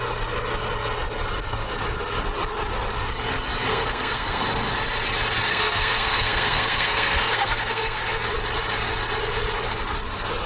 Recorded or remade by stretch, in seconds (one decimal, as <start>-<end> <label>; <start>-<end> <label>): 0.0-3.7 recorded; 3.7-4.4 remade; 4.4-5.5 recorded; 5.5-8.2 remade; 8.2-10.5 recorded